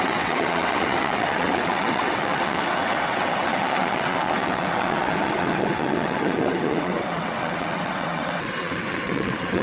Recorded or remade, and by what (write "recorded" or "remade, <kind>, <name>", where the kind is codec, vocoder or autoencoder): remade, vocoder, WaveNeXt